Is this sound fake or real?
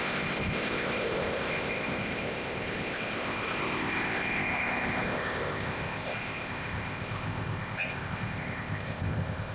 fake